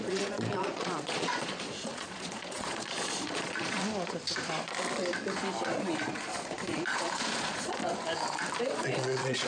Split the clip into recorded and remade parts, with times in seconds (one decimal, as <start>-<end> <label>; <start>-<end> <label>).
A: 0.0-3.8 remade; 3.8-5.6 recorded; 5.6-7.8 remade; 7.8-8.6 recorded; 8.6-9.5 remade